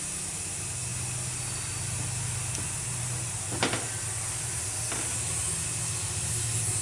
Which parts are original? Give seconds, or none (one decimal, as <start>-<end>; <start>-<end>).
0.0-6.8